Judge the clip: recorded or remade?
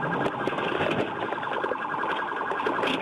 recorded